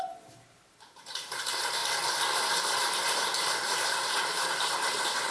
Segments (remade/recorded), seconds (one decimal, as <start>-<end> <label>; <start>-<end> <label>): 0.0-1.8 remade; 1.8-2.5 recorded; 2.5-5.3 remade